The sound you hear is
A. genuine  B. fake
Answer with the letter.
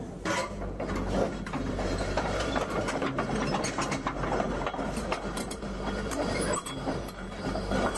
B